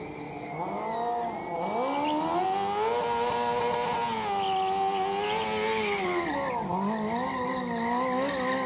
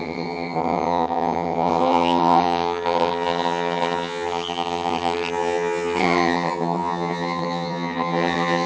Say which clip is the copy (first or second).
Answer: second